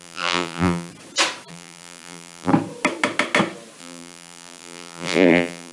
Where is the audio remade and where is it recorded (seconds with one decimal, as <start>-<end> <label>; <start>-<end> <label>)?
0.0-0.9 remade; 0.9-1.5 recorded; 1.5-2.5 remade; 2.5-3.8 recorded; 3.8-5.7 remade